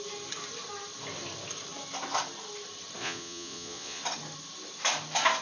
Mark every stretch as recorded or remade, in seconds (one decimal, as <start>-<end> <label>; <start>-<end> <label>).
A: 0.0-3.0 recorded; 3.0-4.0 remade; 4.0-5.4 recorded